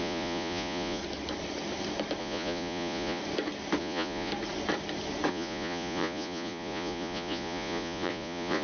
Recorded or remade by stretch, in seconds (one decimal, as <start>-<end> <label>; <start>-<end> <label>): 0.0-1.0 remade; 1.0-2.2 recorded; 2.2-3.2 remade; 3.2-3.8 recorded; 3.8-4.3 remade; 4.3-5.3 recorded; 5.3-8.6 remade